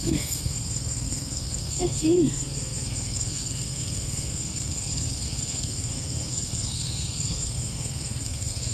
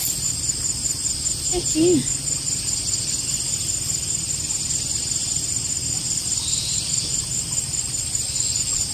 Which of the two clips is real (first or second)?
second